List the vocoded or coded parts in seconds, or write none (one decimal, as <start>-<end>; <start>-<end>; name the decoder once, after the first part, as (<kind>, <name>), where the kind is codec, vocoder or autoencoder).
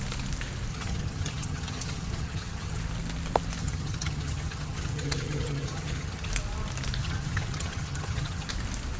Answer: 0.7-2.8 (vocoder, HiFi-GAN); 3.6-6.3; 7.0-8.5